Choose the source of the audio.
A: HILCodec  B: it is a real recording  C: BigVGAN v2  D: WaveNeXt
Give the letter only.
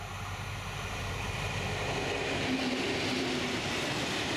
B